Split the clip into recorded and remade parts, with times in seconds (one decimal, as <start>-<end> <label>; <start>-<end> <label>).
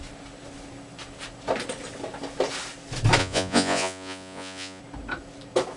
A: 0.0-3.2 recorded; 3.2-4.8 remade; 4.8-5.8 recorded